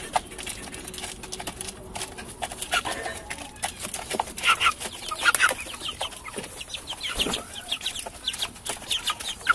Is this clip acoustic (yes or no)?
yes